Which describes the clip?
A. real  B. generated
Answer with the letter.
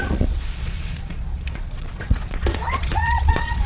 B